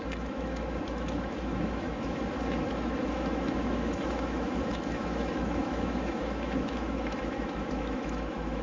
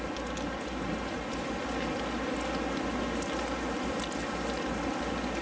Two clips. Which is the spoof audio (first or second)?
first